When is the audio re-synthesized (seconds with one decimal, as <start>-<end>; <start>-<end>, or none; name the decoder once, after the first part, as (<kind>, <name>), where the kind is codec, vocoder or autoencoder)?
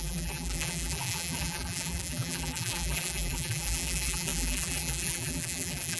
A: 0.0-6.0 (vocoder, BigVGAN v2)